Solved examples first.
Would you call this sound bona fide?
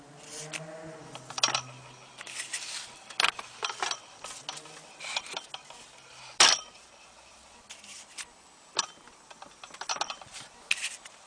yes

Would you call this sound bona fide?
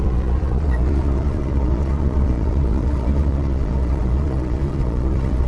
no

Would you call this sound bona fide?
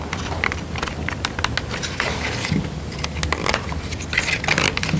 yes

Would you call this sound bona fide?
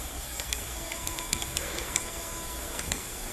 no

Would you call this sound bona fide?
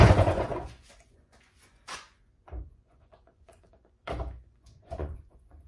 no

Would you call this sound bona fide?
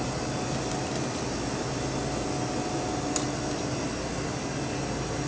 yes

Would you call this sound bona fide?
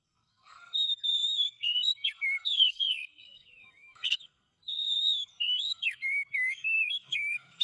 no